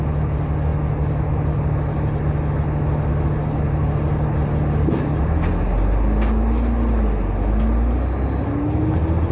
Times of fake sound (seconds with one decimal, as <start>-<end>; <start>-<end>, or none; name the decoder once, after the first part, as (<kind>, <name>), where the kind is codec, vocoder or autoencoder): none